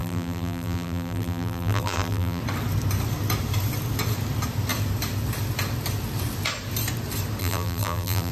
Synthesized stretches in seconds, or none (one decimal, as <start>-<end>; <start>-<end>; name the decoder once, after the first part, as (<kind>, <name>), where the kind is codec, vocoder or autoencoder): 0.0-2.4 (vocoder, BigVGAN v2); 7.4-8.3